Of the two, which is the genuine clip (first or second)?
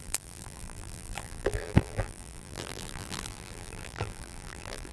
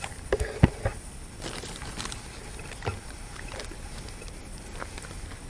second